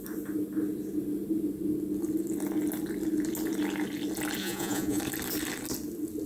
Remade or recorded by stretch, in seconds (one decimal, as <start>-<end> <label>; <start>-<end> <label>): 0.0-4.4 recorded; 4.4-5.0 remade; 5.0-6.3 recorded